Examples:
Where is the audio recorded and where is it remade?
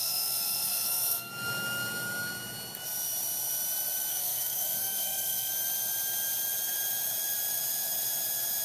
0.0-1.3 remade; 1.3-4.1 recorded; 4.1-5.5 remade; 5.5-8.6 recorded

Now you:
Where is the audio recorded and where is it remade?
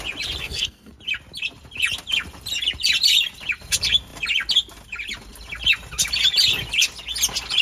0.0-0.4 recorded; 0.4-0.9 remade; 0.9-7.6 recorded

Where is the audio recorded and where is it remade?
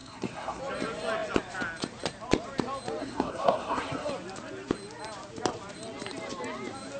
0.0-0.6 remade; 0.6-3.0 recorded; 3.0-4.1 remade; 4.1-7.0 recorded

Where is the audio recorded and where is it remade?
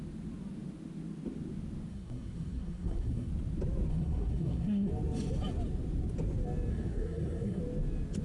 0.0-1.9 recorded; 1.9-3.3 remade; 3.3-3.9 recorded; 3.9-4.9 remade; 4.9-6.7 recorded; 6.7-7.6 remade; 7.6-8.2 recorded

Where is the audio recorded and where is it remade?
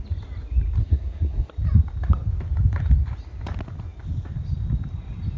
0.0-0.8 recorded; 0.8-1.5 remade; 1.5-5.4 recorded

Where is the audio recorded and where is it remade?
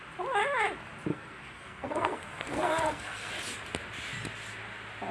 0.0-1.1 recorded; 1.1-3.3 remade; 3.3-5.1 recorded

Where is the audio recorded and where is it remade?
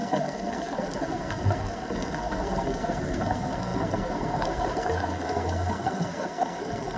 0.0-7.0 remade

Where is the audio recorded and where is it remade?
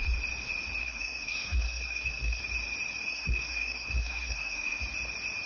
0.0-0.8 recorded; 0.8-2.4 remade; 2.4-3.1 recorded; 3.1-4.8 remade; 4.8-5.5 recorded